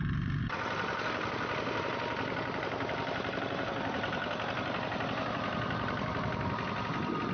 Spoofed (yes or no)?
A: no